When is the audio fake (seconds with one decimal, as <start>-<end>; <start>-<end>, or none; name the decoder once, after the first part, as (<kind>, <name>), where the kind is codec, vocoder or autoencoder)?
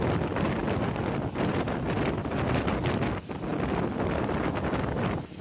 none